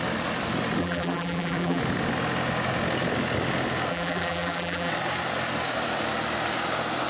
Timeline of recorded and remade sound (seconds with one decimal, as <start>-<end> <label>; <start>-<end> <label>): 0.0-0.8 recorded; 0.8-1.8 remade; 1.8-3.9 recorded; 3.9-4.9 remade; 4.9-7.1 recorded